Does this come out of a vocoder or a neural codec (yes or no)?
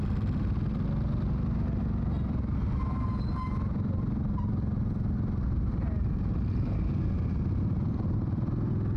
no